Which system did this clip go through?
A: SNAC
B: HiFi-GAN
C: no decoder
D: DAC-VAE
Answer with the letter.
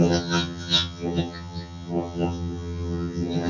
B